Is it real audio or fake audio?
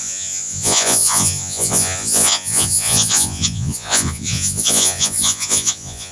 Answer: fake